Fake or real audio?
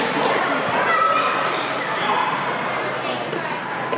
real